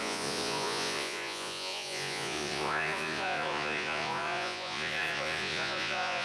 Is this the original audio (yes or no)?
no